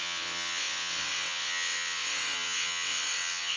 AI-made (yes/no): yes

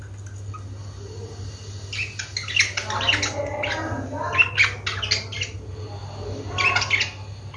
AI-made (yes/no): no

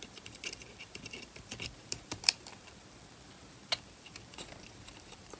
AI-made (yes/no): yes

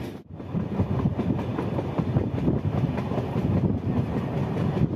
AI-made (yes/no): no